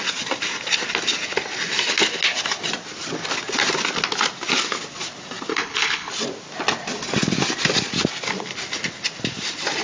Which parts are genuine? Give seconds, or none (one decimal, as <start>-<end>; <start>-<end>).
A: 0.0-5.5; 6.1-9.8